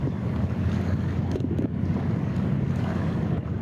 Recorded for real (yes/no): no